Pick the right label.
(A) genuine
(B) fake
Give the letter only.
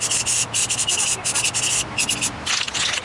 A